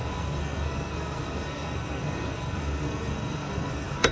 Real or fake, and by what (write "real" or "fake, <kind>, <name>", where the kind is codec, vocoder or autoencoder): fake, codec, SNAC